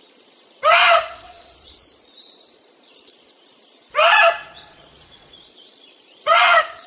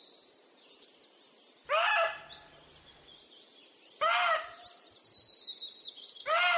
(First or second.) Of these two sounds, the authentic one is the second